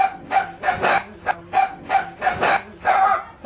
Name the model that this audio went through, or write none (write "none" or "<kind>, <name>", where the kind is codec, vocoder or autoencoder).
none